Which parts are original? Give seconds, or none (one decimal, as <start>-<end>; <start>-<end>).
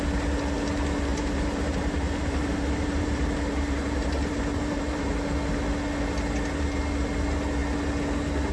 0.0-1.1; 5.1-8.5